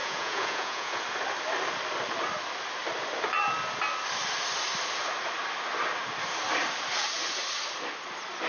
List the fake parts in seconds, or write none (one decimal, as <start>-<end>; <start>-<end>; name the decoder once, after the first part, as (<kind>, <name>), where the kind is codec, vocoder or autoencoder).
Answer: 0.0-1.0 (vocoder, Vocos)